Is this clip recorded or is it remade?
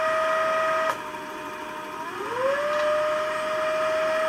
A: recorded